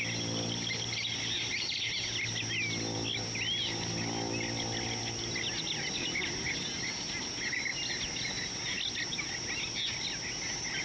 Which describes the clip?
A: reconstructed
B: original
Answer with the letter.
B